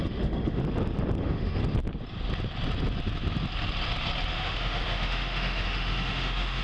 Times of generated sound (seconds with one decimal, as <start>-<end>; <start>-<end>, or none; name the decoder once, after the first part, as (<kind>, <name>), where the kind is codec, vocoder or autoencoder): 0.0-0.6 (autoencoder, DAC-VAE); 1.2-1.6; 4.3-6.6